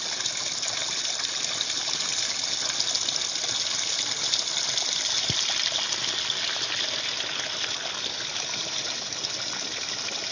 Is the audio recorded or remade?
recorded